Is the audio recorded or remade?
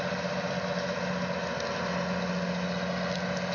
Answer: recorded